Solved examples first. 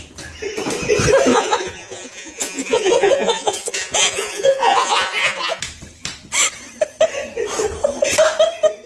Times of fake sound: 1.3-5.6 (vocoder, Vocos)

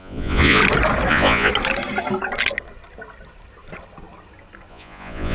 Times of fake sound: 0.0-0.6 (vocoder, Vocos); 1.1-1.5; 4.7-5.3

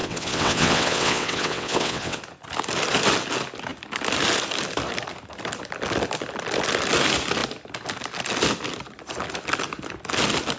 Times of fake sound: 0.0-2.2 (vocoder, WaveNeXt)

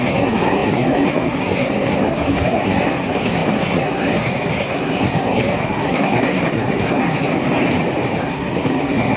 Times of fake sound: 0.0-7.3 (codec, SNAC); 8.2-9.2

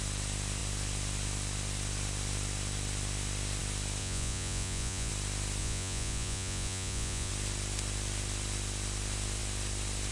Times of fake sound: 4.0-5.1 (vocoder, Vocos); 5.6-7.3

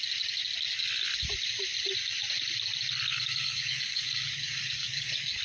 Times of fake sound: 3.1-5.4 (codec, DAC)